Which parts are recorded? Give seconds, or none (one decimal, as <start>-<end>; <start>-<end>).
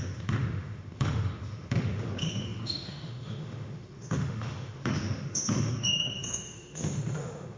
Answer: none